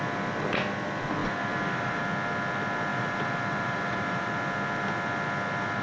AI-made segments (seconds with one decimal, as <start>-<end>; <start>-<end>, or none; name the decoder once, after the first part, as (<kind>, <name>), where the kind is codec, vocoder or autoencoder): 1.2-2.0 (vocoder, BigVGAN v2); 2.9-4.3